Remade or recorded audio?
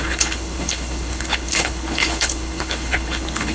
remade